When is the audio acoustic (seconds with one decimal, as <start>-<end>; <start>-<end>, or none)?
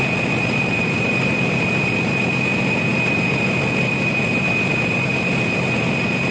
0.0-6.3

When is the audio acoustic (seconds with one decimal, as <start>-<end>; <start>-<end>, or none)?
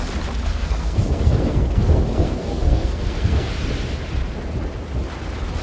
0.0-0.5; 3.5-5.6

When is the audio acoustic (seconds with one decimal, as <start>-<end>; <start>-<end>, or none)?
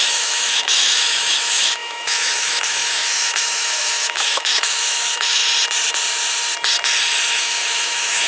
5.4-7.3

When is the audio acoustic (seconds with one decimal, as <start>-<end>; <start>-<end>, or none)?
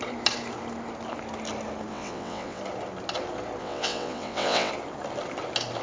0.0-1.9; 2.6-3.6; 4.7-5.8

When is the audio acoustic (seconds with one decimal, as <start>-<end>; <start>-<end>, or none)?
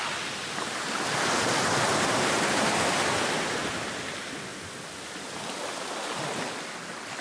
0.0-7.2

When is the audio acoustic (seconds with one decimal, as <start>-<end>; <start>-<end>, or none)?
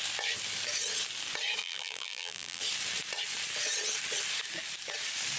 0.0-1.6; 2.6-5.4